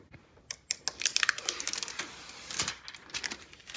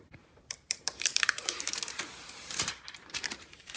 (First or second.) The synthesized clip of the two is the second